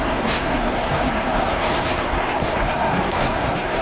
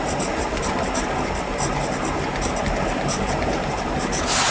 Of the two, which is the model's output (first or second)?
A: first